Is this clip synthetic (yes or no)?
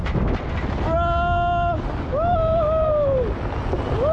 no